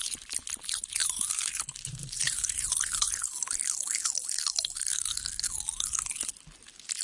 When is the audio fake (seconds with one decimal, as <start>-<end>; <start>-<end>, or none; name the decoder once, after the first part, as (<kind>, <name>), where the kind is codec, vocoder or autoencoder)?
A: 1.0-2.8 (vocoder, BigVGAN v2)